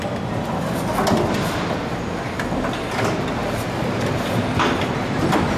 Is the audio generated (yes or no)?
no